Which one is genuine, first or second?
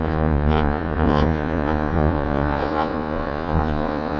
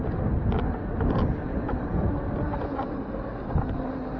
second